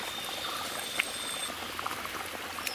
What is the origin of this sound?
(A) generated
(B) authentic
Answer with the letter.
B